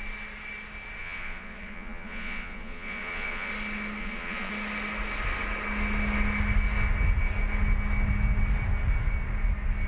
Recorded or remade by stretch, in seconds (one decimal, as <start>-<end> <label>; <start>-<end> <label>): 0.0-1.0 recorded; 1.0-3.5 remade; 3.5-4.0 recorded; 4.0-4.5 remade; 4.5-9.9 recorded